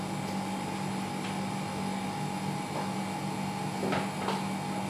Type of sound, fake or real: real